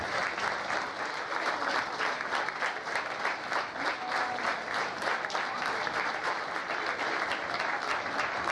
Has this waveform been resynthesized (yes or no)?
no